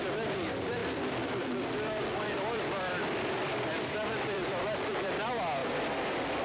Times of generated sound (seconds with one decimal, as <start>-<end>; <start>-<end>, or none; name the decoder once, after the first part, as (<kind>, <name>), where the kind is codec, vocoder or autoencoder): 0.0-6.4 (vocoder, BigVGAN v2)